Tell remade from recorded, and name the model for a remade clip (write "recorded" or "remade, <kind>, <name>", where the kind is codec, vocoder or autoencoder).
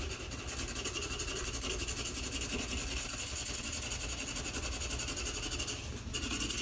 recorded